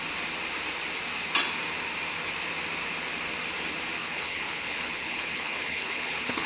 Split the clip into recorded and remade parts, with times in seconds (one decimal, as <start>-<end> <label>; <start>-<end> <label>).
0.0-4.0 recorded; 4.0-6.5 remade